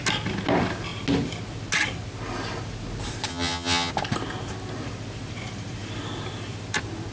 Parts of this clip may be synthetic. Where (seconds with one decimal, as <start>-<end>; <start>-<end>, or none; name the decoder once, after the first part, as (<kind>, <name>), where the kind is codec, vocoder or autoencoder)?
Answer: 3.3-3.9 (vocoder, HiFi-GAN)